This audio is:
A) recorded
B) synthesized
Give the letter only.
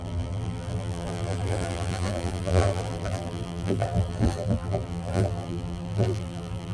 B